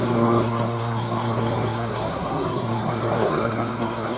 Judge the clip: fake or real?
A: fake